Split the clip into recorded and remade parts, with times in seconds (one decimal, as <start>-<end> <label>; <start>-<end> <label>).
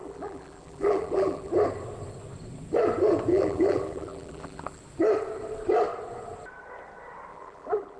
0.0-1.5 remade; 1.5-3.3 recorded; 3.3-4.8 remade; 4.8-7.3 recorded; 7.3-8.0 remade